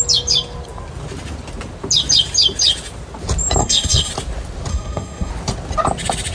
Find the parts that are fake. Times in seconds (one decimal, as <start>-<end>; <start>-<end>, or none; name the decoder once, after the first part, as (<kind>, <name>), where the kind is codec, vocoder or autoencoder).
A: 3.6-4.1 (codec, SNAC); 4.7-5.3